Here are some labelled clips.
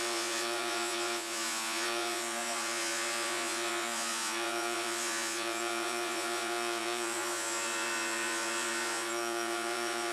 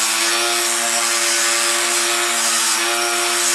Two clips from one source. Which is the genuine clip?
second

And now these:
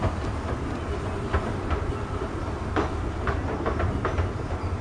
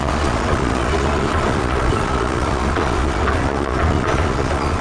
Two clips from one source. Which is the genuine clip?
first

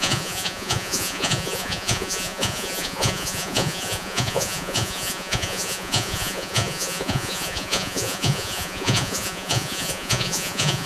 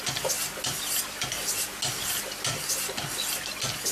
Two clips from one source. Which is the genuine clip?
second